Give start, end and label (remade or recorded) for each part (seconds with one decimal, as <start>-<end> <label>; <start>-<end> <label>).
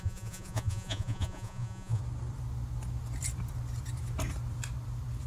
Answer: 0.0-2.0 remade; 2.0-5.3 recorded